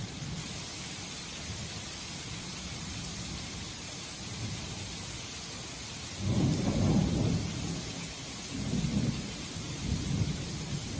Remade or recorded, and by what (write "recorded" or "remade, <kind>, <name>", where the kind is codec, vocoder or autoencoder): recorded